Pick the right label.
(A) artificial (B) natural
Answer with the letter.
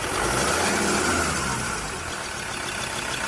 B